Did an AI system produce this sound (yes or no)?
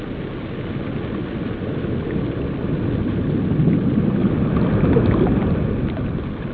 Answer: no